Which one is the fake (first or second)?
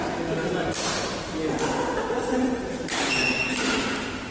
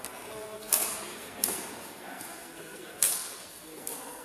second